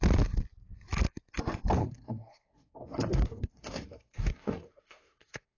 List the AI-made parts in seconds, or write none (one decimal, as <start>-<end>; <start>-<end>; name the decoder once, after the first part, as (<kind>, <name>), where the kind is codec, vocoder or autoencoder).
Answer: 1.8-5.6 (codec, SNAC)